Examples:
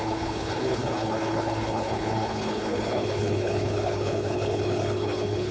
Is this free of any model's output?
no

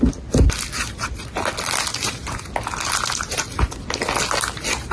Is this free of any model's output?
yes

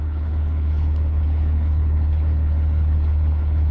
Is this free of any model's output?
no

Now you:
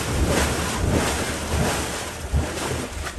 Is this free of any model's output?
yes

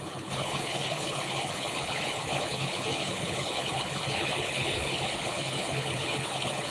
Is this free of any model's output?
no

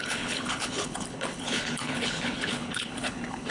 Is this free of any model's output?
no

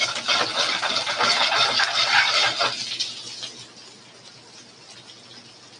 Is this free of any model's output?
yes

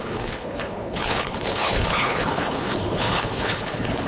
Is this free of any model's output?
no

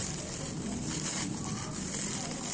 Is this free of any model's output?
yes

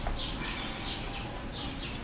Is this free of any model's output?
yes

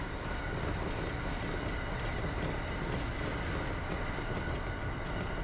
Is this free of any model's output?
yes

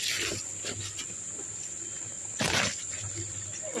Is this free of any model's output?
yes